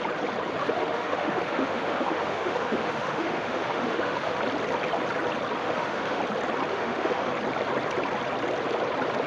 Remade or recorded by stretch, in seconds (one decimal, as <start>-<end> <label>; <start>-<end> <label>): 0.0-0.6 recorded; 0.6-4.4 remade; 4.4-5.6 recorded; 5.6-6.2 remade; 6.2-6.7 recorded; 6.7-7.3 remade; 7.3-9.3 recorded